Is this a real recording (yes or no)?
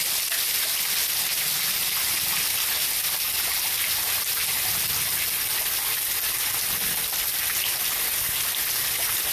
yes